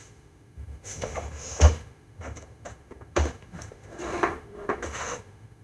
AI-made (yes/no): yes